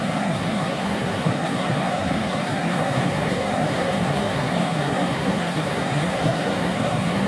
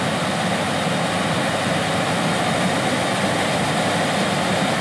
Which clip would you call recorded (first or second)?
second